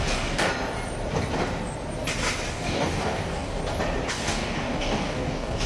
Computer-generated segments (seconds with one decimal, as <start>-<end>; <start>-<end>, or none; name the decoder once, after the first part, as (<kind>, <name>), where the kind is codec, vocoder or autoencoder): 0.0-0.5 (codec, DAC); 2.5-3.6; 4.1-5.7